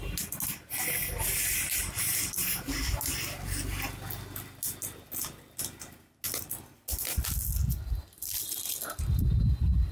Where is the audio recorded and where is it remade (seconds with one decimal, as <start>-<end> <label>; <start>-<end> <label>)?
0.0-9.9 recorded